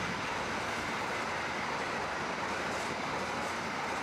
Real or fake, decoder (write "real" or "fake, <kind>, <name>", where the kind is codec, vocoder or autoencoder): real